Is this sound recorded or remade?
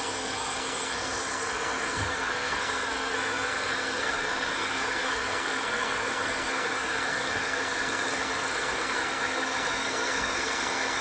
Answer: remade